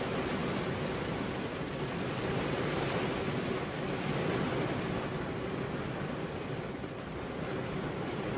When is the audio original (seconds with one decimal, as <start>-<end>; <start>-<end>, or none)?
0.0-8.4